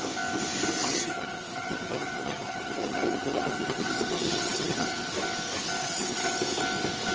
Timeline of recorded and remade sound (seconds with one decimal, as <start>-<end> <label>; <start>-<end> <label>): 0.0-0.8 recorded; 0.8-5.1 remade; 5.1-5.8 recorded; 5.8-6.3 remade; 6.3-7.1 recorded